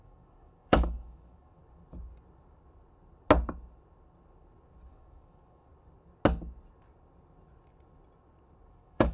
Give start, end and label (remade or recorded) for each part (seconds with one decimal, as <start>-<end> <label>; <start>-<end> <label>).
0.0-1.6 remade; 1.6-4.9 recorded; 4.9-5.7 remade; 5.7-8.7 recorded; 8.7-9.1 remade